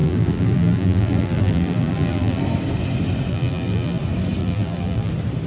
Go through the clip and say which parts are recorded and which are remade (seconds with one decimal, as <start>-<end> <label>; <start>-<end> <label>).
0.0-2.4 remade; 2.4-3.3 recorded; 3.3-4.0 remade; 4.0-4.4 recorded; 4.4-5.1 remade; 5.1-5.5 recorded